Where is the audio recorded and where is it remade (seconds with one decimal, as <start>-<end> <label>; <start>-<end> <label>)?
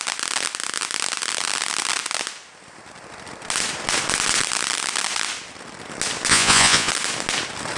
0.0-6.3 recorded; 6.3-6.9 remade; 6.9-7.8 recorded